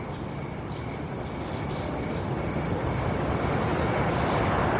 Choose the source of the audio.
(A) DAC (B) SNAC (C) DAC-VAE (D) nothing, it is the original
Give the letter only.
D